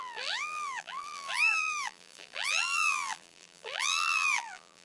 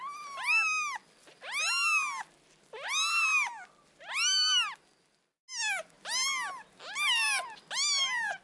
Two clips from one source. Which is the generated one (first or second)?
first